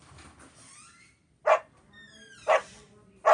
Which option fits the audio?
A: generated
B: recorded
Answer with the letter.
B